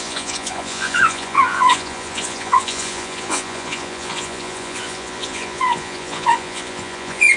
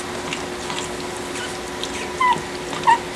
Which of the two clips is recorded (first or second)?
second